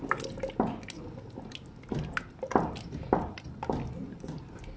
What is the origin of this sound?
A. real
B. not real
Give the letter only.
A